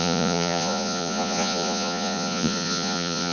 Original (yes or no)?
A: no